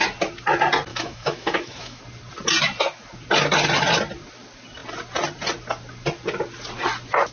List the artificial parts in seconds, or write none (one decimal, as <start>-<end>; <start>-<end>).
0.9-2.0